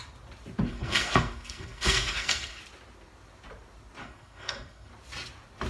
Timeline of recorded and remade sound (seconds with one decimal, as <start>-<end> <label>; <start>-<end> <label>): 0.0-0.7 recorded; 0.7-2.6 remade; 2.6-4.0 recorded; 4.0-4.9 remade; 4.9-5.7 recorded